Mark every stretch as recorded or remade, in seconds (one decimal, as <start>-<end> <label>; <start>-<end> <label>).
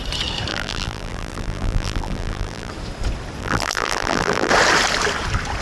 0.0-0.5 recorded; 0.5-2.7 remade; 2.7-3.4 recorded; 3.4-4.5 remade; 4.5-5.6 recorded